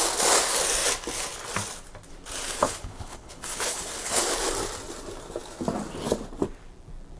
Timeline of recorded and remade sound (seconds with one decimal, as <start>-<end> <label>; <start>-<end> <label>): 0.0-2.6 recorded; 2.6-4.2 remade; 4.2-7.2 recorded